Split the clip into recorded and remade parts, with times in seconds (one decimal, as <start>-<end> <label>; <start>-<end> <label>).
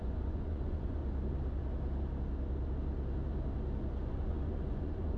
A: 0.0-1.0 remade; 1.0-4.1 recorded; 4.1-5.2 remade